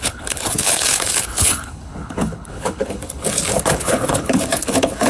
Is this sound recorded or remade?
remade